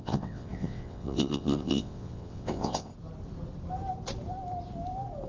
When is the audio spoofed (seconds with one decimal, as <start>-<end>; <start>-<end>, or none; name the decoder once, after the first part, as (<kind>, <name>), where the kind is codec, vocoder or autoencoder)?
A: 0.0-2.9 (vocoder, WaveNeXt)